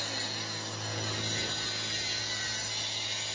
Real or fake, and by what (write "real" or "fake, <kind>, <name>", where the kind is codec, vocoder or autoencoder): real